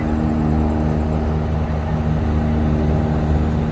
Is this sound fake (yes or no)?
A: no